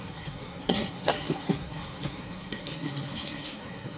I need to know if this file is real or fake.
fake